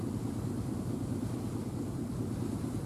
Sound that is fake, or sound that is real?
fake